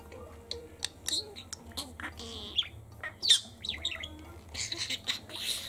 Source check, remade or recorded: recorded